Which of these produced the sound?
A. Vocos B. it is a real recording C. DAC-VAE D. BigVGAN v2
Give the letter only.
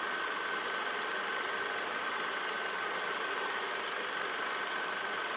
B